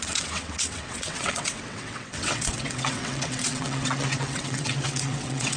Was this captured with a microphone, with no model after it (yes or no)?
no